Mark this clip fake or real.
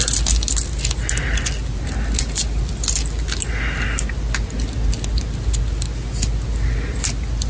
real